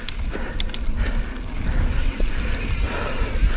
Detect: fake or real fake